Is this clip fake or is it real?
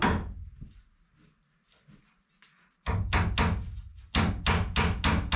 real